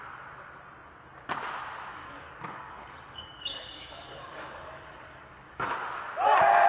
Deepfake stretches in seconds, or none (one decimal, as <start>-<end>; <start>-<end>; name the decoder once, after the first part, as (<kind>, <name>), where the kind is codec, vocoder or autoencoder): 1.9-5.7 (codec, DAC)